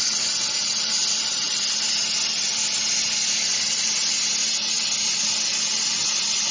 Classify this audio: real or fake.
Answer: real